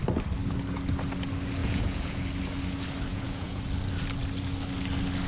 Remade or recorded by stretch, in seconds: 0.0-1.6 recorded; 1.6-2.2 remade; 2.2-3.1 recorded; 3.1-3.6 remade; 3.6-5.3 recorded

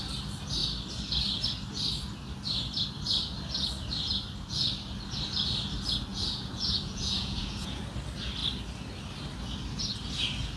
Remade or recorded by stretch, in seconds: 0.0-6.1 recorded; 6.1-7.8 remade; 7.8-10.6 recorded

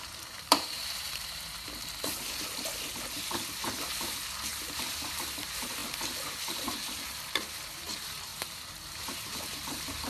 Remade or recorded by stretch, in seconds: 0.0-5.8 remade; 5.8-6.4 recorded; 6.4-10.1 remade

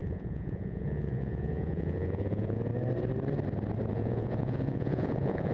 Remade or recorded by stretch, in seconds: 0.0-2.7 remade; 2.7-3.9 recorded; 3.9-5.5 remade